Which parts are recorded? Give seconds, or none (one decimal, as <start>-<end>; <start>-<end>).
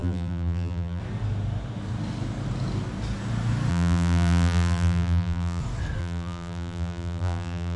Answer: 1.0-3.7; 5.6-6.0